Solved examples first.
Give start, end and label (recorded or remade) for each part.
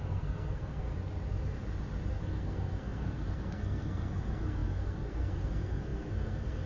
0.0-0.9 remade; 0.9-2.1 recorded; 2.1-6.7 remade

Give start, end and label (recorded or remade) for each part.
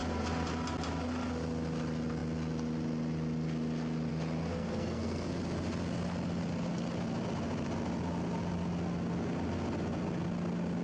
0.0-4.5 recorded; 4.5-5.3 remade; 5.3-10.8 recorded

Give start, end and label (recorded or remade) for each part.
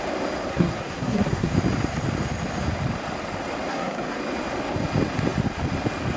0.0-0.5 recorded; 0.5-1.5 remade; 1.5-3.7 recorded; 3.7-4.2 remade; 4.2-6.2 recorded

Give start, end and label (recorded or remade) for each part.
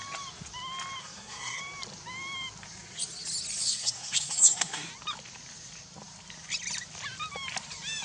0.0-1.0 recorded; 1.0-1.6 remade; 1.6-3.6 recorded; 3.6-4.9 remade; 4.9-8.0 recorded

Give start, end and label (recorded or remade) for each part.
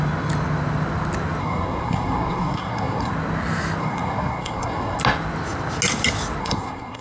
0.0-1.4 recorded; 1.4-3.1 remade; 3.1-3.8 recorded; 3.8-5.0 remade; 5.0-6.4 recorded; 6.4-7.0 remade